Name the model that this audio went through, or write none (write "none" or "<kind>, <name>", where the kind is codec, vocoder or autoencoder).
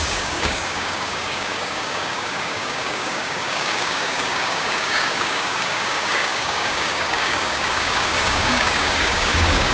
codec, DAC